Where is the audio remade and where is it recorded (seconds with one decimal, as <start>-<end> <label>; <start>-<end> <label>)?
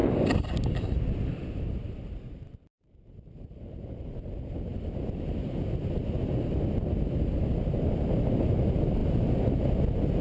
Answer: 0.0-10.2 recorded